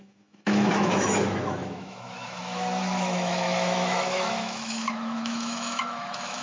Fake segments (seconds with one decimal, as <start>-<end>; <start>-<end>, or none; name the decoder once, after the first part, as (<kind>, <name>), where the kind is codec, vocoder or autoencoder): 0.0-6.4 (autoencoder, DAC-VAE)